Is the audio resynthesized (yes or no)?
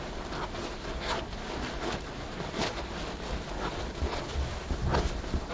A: no